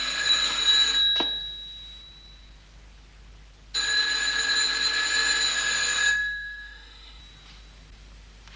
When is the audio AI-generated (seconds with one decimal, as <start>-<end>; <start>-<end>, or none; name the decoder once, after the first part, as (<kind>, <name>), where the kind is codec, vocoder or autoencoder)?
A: 0.0-0.6 (autoencoder, DAC-VAE); 5.5-7.2